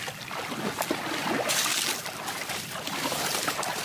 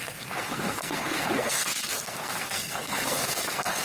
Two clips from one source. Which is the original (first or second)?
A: first